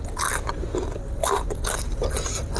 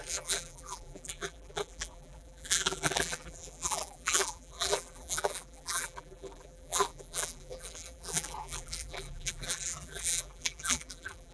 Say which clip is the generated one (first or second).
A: second